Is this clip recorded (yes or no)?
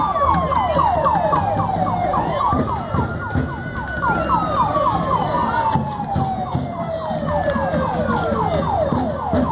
yes